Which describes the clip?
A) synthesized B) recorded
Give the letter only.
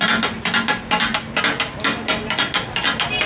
B